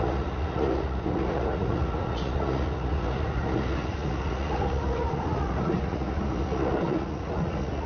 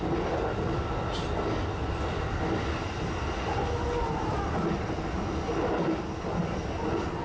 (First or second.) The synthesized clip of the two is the first